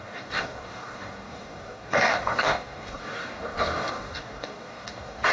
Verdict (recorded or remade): remade